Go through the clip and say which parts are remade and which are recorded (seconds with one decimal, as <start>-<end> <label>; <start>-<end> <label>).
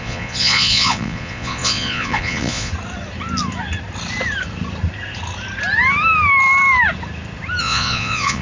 0.0-2.7 remade; 2.7-7.6 recorded; 7.6-8.4 remade